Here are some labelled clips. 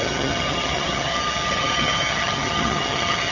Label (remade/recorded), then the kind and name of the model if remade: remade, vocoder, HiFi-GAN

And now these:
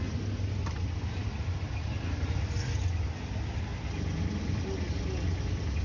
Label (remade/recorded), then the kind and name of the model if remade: recorded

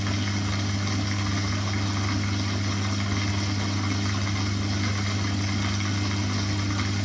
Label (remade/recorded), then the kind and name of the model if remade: recorded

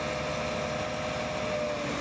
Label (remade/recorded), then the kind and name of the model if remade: recorded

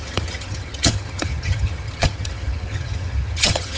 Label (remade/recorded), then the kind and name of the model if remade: remade, vocoder, HiFi-GAN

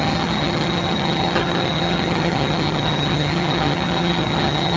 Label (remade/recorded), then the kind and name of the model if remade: remade, vocoder, HiFi-GAN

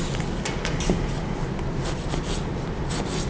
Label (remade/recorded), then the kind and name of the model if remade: recorded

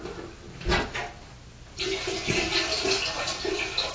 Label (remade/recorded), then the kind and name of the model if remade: recorded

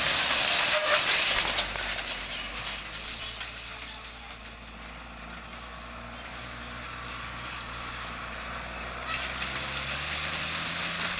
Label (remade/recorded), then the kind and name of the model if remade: recorded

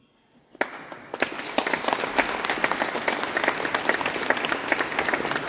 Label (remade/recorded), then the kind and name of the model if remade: recorded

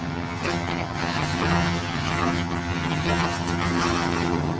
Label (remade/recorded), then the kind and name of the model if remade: remade, vocoder, HiFi-GAN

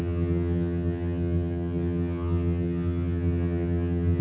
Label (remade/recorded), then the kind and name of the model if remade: remade, vocoder, HiFi-GAN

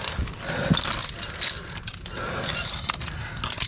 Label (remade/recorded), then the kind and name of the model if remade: recorded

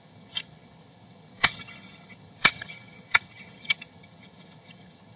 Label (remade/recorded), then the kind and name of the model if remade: remade, vocoder, HiFi-GAN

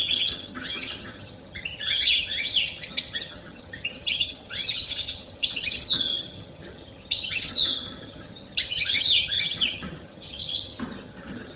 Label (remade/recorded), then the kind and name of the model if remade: remade, vocoder, HiFi-GAN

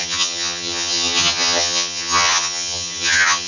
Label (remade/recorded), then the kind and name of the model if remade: remade, vocoder, HiFi-GAN